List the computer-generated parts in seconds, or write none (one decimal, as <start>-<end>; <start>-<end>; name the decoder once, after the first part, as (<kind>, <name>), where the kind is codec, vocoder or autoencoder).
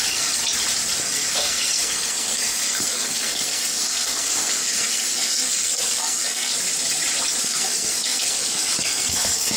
0.0-0.4 (codec, SNAC); 1.0-6.5; 7.4-9.6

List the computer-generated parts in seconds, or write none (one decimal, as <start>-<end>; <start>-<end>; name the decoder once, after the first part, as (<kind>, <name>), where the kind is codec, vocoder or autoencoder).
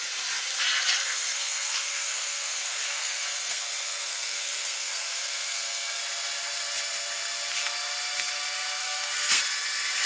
1.0-6.0 (codec, SNAC); 8.8-9.4